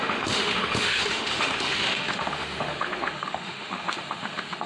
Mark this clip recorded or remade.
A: remade